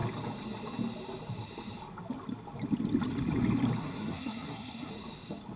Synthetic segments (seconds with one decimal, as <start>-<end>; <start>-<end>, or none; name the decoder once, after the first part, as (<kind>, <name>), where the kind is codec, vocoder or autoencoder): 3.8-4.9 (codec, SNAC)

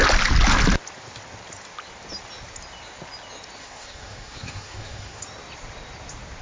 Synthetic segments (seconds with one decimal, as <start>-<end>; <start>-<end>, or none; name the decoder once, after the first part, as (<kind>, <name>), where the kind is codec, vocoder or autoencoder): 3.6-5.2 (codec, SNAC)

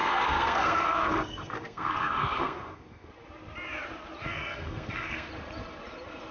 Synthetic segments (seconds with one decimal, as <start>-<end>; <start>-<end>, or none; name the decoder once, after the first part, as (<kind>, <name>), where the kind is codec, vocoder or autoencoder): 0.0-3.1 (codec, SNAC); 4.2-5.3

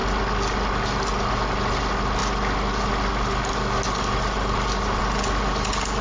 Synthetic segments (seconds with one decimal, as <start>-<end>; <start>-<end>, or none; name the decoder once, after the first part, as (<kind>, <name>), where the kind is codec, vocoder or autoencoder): none